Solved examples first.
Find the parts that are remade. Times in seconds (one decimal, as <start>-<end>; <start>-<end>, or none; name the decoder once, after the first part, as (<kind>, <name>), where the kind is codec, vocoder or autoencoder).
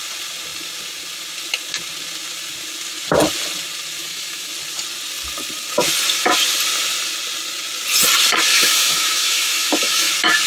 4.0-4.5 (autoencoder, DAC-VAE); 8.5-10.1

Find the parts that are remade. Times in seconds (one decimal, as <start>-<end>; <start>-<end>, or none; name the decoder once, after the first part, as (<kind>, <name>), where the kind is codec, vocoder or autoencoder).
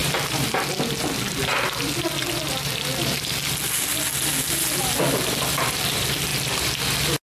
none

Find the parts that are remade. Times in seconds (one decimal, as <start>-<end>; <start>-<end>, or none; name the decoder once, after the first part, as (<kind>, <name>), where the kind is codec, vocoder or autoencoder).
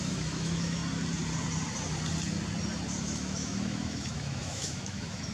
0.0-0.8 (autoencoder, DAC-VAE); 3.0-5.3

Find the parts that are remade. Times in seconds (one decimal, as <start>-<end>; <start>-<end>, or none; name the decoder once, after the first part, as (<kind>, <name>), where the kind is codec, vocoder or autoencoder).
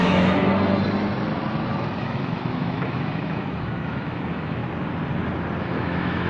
0.0-0.5 (autoencoder, DAC-VAE); 2.0-4.6; 5.6-6.3